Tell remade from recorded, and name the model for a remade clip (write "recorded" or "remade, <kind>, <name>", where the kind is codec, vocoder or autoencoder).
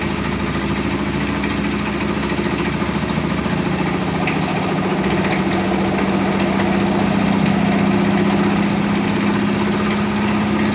recorded